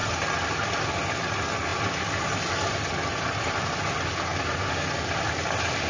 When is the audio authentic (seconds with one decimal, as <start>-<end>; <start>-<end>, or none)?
0.0-5.9